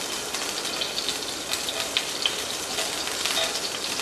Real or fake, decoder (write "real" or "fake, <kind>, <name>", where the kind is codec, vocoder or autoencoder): real